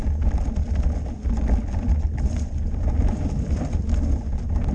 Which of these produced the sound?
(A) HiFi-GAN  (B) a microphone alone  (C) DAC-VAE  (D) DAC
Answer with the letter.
B